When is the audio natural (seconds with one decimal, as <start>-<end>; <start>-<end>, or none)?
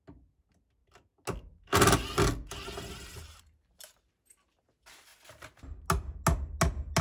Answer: 0.0-7.0